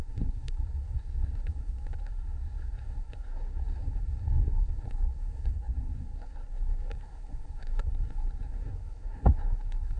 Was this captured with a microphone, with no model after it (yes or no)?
no